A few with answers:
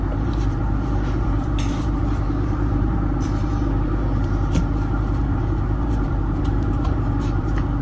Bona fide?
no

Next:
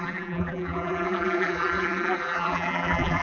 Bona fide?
no